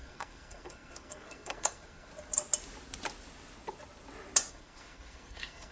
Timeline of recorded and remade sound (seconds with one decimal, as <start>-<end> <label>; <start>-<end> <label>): 0.0-2.1 remade; 2.1-4.5 recorded; 4.5-5.7 remade